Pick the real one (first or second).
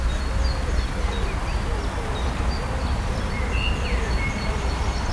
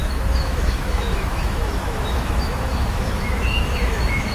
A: first